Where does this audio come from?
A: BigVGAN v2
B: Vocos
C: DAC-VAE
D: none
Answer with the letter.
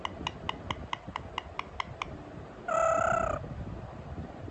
D